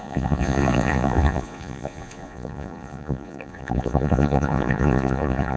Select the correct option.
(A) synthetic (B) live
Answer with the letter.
A